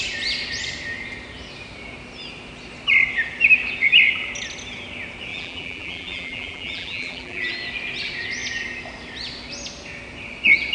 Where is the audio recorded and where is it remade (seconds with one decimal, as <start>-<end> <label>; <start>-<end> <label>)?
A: 0.0-5.3 recorded; 5.3-7.5 remade; 7.5-10.7 recorded